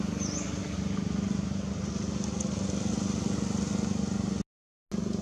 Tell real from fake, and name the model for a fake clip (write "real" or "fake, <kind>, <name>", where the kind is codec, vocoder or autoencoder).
real